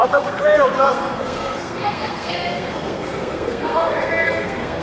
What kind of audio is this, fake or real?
fake